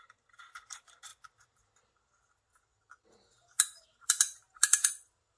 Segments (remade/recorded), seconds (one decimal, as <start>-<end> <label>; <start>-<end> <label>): 0.0-1.1 remade; 1.1-3.8 recorded; 3.8-5.4 remade